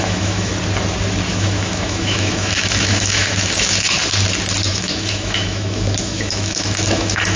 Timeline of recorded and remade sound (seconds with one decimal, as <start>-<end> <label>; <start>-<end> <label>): 0.0-0.5 remade; 0.5-1.3 recorded; 1.3-4.0 remade; 4.0-4.7 recorded; 4.7-7.4 remade